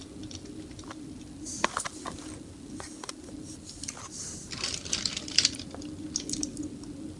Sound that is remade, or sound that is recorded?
recorded